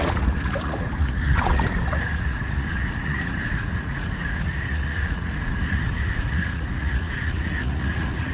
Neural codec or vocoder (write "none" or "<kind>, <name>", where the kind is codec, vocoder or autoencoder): vocoder, Vocos